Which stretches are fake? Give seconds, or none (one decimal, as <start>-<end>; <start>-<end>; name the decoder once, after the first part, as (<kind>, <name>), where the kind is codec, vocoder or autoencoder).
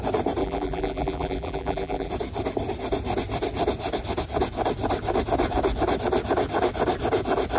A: 0.4-2.1 (vocoder, BigVGAN v2)